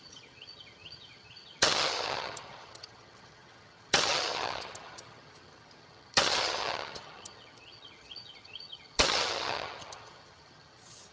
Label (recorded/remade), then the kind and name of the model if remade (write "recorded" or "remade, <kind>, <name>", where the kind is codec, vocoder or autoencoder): remade, vocoder, HiFi-GAN